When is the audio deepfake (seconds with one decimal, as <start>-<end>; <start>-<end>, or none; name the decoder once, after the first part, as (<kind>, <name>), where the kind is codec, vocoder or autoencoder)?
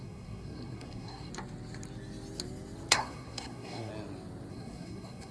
0.0-1.3 (codec, SNAC); 2.9-3.9; 4.5-5.3